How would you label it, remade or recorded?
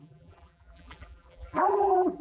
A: remade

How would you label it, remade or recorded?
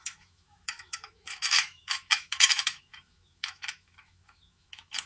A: remade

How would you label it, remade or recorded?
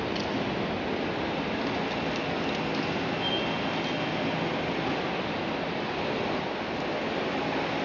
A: recorded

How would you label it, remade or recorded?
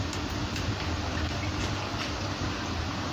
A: recorded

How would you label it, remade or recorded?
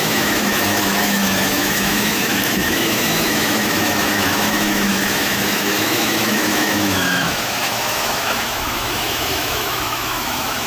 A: remade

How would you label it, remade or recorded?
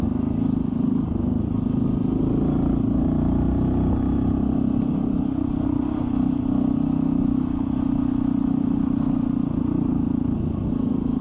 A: recorded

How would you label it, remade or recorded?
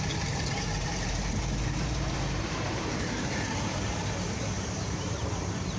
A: remade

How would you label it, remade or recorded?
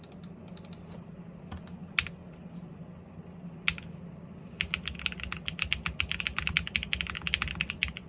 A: recorded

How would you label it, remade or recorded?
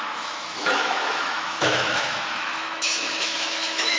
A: remade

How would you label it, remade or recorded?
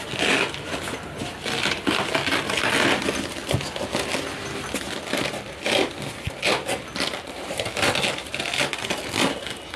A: recorded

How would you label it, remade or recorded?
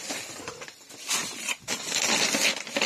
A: recorded